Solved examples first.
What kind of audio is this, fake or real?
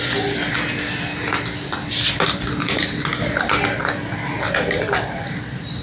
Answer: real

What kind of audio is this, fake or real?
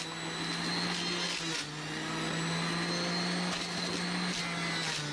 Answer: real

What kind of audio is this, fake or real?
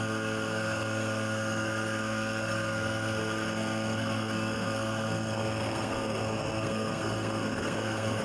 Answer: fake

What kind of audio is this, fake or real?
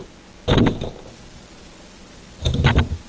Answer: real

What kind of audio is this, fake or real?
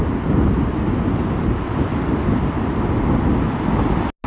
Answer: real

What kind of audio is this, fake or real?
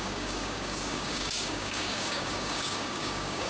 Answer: fake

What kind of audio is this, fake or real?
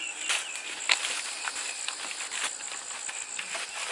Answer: real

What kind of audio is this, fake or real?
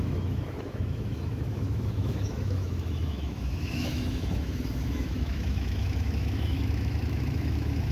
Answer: fake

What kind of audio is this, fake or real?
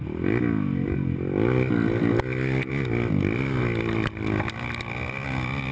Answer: real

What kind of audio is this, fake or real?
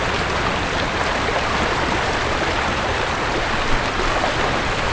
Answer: real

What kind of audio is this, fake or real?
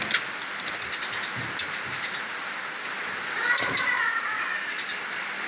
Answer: real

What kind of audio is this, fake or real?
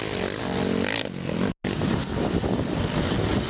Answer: real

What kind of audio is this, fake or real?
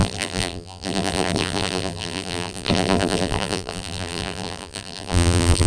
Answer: fake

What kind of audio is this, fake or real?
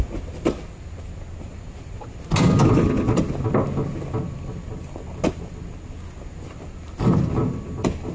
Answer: real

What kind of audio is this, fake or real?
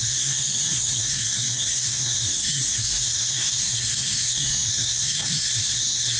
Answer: fake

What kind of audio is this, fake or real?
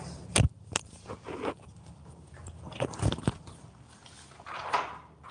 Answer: real